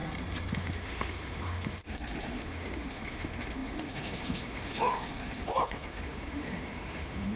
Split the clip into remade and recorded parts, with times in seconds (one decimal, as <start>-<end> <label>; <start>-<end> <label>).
0.0-0.5 recorded; 0.5-7.4 remade